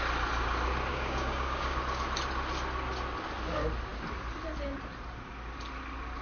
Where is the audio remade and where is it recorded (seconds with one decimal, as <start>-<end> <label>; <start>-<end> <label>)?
0.0-0.9 recorded; 0.9-1.8 remade; 1.8-6.2 recorded